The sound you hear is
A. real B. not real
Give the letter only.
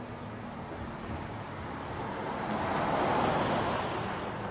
A